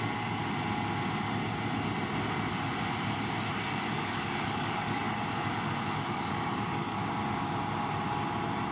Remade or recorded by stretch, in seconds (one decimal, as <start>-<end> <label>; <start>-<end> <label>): 0.0-0.4 remade; 0.4-3.5 recorded; 3.5-5.0 remade; 5.0-6.0 recorded; 6.0-7.0 remade; 7.0-8.7 recorded